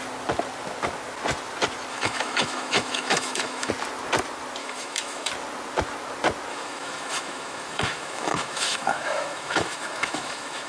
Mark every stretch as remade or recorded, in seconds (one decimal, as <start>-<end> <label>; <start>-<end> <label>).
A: 0.0-1.9 recorded; 1.9-3.7 remade; 3.7-4.6 recorded; 4.6-5.3 remade; 5.3-6.5 recorded; 6.5-10.7 remade